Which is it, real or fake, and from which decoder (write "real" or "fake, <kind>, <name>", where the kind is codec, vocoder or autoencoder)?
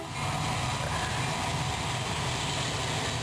real